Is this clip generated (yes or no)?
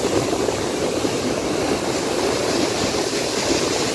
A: no